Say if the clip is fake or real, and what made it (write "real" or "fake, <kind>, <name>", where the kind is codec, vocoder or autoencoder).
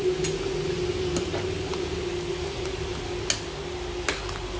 real